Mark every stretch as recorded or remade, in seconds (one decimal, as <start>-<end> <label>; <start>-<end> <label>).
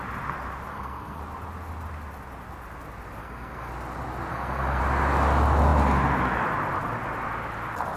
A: 0.0-0.7 recorded; 0.7-1.2 remade; 1.2-3.2 recorded; 3.2-3.7 remade; 3.7-4.3 recorded; 4.3-4.8 remade; 4.8-8.0 recorded